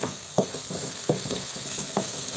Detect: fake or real fake